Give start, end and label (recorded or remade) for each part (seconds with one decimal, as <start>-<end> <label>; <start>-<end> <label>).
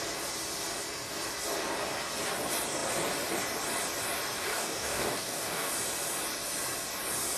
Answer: 0.0-4.4 recorded; 4.4-5.7 remade; 5.7-7.4 recorded